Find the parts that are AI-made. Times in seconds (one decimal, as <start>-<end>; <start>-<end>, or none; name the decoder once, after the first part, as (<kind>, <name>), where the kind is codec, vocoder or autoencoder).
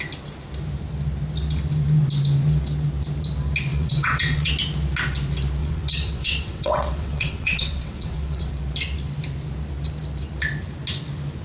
3.7-4.5 (vocoder, WaveNeXt); 5.6-8.5